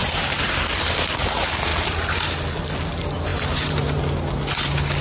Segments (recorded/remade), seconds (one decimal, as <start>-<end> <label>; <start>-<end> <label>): 0.0-0.8 remade; 0.8-1.7 recorded; 1.7-2.6 remade; 2.6-3.3 recorded; 3.3-4.0 remade; 4.0-5.0 recorded